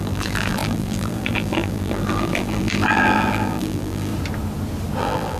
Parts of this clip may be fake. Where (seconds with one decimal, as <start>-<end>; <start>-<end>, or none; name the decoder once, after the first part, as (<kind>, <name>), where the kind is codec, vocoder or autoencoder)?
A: 0.0-4.1 (vocoder, BigVGAN v2); 5.0-5.4